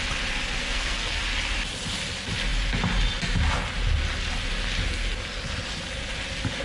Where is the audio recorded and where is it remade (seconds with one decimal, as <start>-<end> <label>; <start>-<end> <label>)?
0.0-0.6 recorded; 0.6-1.2 remade; 1.2-6.6 recorded